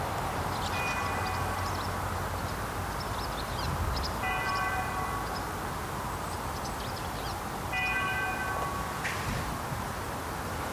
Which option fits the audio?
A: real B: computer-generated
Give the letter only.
A